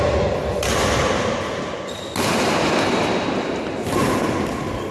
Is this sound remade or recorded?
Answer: recorded